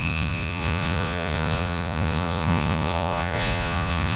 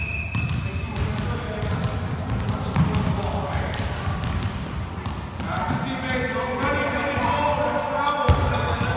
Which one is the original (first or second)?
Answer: second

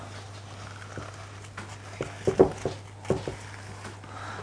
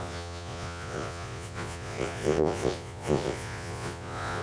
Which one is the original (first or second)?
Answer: first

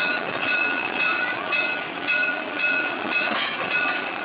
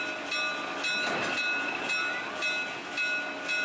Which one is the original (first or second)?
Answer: second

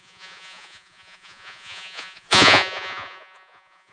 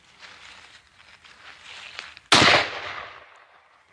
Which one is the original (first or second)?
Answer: second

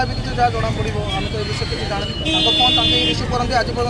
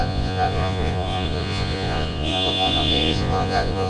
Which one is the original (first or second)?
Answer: first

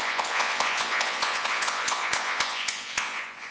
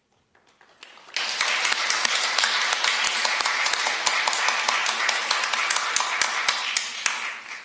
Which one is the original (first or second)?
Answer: second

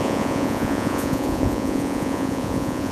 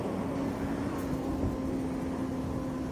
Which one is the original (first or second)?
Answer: second